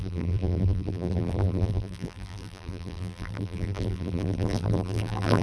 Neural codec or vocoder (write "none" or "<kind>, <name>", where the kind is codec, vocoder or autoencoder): vocoder, BigVGAN v2